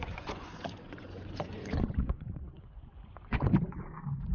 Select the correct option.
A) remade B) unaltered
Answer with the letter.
A